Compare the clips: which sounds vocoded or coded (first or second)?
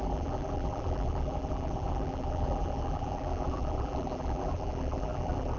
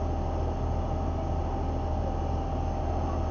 first